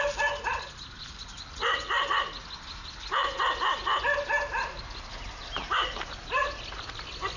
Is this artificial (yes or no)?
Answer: no